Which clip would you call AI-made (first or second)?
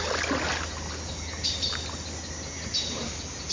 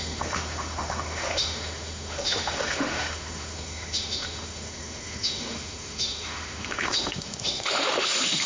second